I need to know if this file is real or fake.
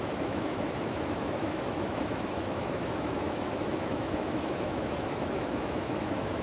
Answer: fake